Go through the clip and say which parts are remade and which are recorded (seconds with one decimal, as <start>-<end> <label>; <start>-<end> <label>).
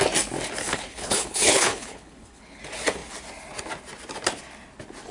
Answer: 0.0-0.6 recorded; 0.6-2.6 remade; 2.6-5.1 recorded